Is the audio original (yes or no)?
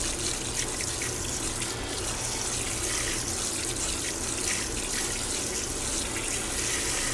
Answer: yes